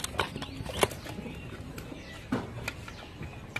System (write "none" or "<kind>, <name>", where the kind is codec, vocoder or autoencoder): none